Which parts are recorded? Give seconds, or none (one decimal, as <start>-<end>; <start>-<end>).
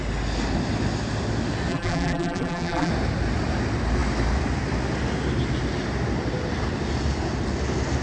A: 0.0-1.7; 2.9-8.0